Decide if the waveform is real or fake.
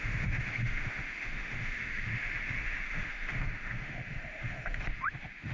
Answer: fake